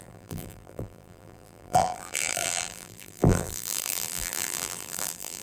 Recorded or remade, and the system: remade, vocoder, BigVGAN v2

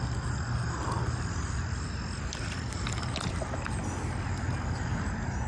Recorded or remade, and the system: recorded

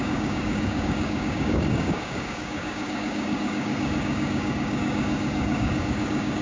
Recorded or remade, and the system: remade, codec, DAC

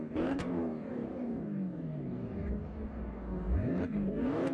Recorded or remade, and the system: remade, codec, DAC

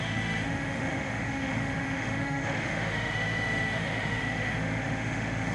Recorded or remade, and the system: remade, autoencoder, DAC-VAE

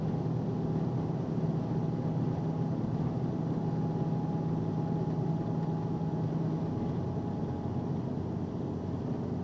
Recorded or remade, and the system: recorded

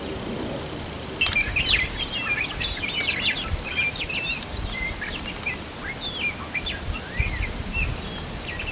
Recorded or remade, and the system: recorded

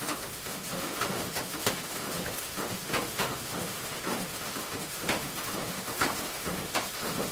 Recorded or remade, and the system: remade, autoencoder, DAC-VAE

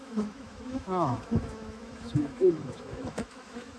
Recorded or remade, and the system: remade, autoencoder, DAC-VAE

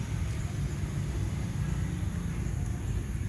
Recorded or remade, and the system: recorded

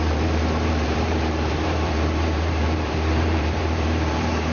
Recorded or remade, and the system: remade, vocoder, BigVGAN v2